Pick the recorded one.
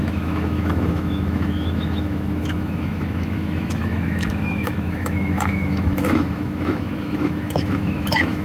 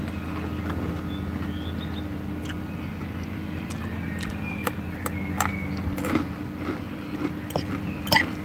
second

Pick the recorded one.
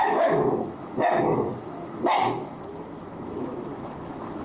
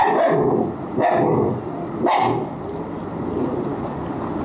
second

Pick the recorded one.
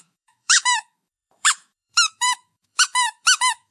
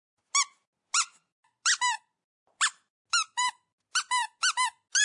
second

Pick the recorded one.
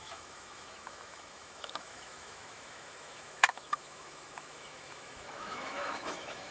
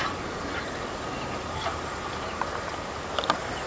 second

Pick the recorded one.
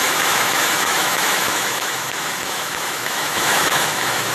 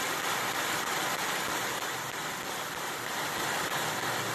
second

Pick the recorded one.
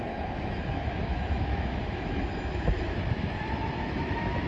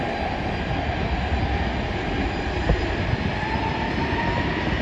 second